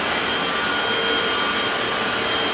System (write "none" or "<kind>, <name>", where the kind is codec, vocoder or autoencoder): none